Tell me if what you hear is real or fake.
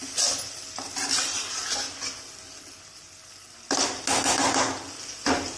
real